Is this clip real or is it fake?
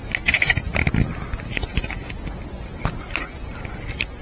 real